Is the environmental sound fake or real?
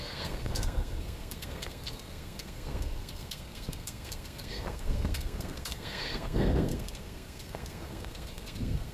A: fake